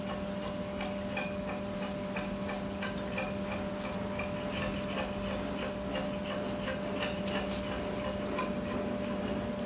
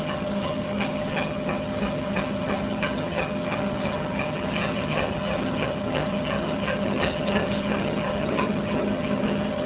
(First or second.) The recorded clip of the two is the first